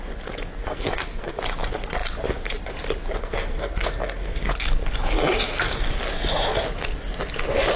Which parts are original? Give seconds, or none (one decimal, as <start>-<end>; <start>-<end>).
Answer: 0.0-0.6; 1.4-3.2; 4.5-7.8